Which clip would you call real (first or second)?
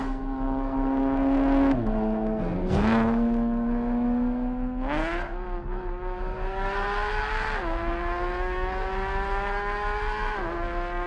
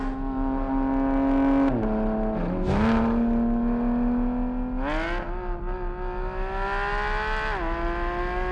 second